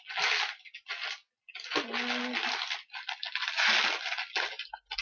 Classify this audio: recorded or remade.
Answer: recorded